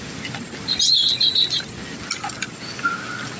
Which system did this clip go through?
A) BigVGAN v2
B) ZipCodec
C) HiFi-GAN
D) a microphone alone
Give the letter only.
D